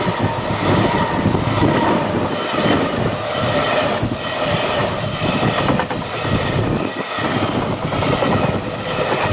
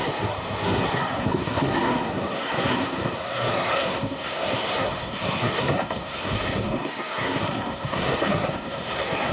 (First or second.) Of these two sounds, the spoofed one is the second